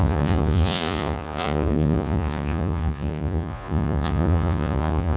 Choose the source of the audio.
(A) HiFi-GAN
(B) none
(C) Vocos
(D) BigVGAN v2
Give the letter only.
C